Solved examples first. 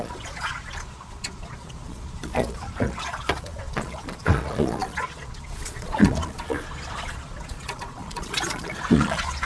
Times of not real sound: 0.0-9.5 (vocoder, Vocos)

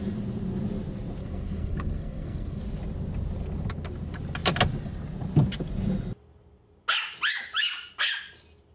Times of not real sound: 1.2-2.6 (codec, SNAC)